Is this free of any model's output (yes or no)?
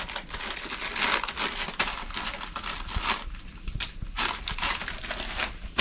yes